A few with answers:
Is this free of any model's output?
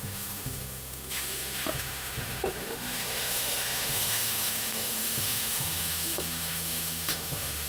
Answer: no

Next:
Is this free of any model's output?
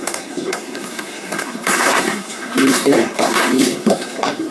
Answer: no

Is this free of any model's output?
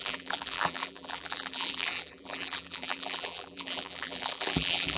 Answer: no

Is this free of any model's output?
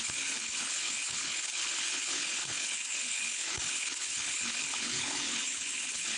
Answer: no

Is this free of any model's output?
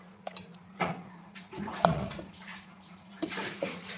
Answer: no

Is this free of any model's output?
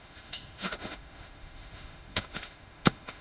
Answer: no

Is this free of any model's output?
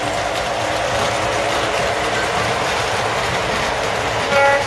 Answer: yes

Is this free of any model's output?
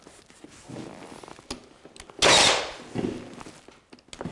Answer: yes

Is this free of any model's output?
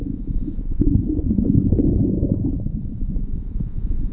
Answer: no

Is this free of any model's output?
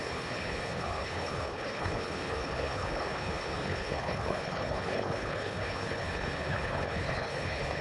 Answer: no